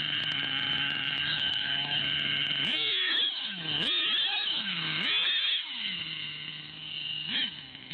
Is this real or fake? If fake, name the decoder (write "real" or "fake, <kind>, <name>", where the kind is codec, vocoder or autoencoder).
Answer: fake, autoencoder, DAC-VAE